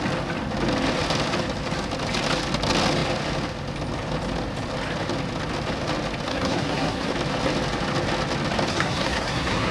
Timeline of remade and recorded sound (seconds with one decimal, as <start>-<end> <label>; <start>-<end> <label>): 0.0-6.3 recorded; 6.3-7.1 remade; 7.1-8.7 recorded; 8.7-9.7 remade